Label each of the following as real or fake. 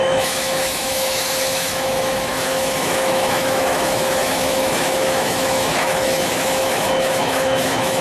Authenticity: fake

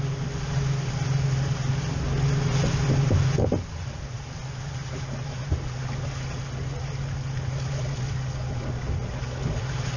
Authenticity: real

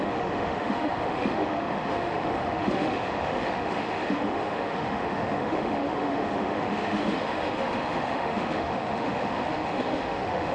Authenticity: fake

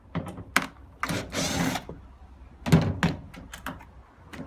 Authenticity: real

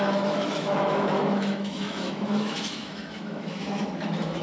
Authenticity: fake